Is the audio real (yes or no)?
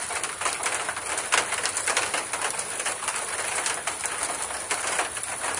yes